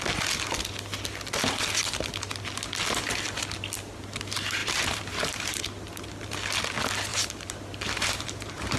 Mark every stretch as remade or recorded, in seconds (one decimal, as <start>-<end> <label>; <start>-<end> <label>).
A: 0.0-4.6 recorded; 4.6-5.6 remade; 5.6-7.1 recorded; 7.1-8.8 remade